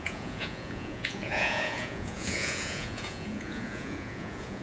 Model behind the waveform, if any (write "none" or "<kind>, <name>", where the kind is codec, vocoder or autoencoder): vocoder, Vocos